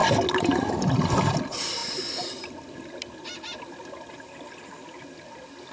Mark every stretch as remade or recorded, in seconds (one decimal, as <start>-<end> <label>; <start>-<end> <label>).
0.0-5.7 recorded